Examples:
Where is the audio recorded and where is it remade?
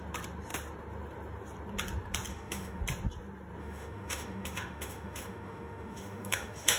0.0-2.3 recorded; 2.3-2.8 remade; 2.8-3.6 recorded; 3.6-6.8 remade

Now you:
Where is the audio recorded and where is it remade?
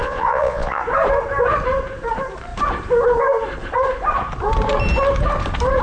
0.0-0.8 remade; 0.8-5.8 recorded